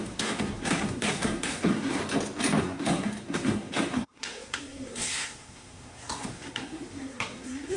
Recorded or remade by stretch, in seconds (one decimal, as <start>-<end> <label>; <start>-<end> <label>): 0.0-2.0 remade; 2.0-2.6 recorded; 2.6-7.8 remade

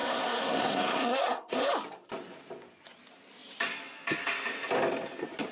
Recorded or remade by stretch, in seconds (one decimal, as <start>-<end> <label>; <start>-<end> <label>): 0.0-1.7 remade; 1.7-5.5 recorded

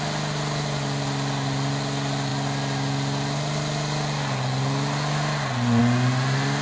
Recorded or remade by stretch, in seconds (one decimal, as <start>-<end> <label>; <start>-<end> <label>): 0.0-6.6 recorded

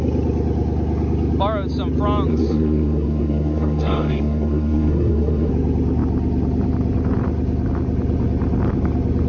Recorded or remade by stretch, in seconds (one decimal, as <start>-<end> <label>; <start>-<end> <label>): 0.0-2.3 recorded; 2.3-5.5 remade; 5.5-9.3 recorded